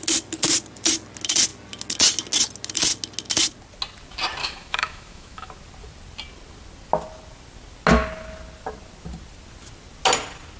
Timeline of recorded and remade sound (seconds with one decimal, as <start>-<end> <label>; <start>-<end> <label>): 0.0-4.4 recorded; 4.4-5.5 remade; 5.5-10.6 recorded